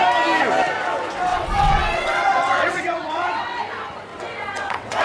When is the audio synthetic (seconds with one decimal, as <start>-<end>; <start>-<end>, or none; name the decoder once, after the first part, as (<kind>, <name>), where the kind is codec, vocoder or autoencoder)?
1.3-3.6 (vocoder, WaveNeXt); 4.1-5.0